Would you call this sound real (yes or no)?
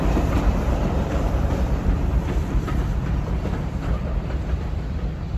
no